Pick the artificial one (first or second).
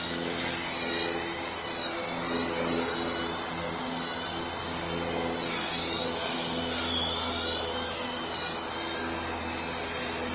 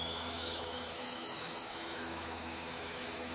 second